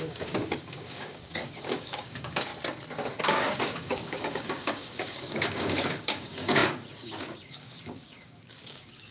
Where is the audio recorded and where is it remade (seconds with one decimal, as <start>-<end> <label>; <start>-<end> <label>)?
0.0-2.5 remade; 2.5-3.2 recorded; 3.2-9.1 remade